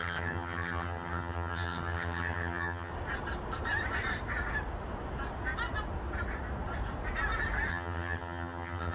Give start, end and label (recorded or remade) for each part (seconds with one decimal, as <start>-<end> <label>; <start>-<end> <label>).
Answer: 0.0-2.9 remade; 2.9-7.7 recorded; 7.7-8.9 remade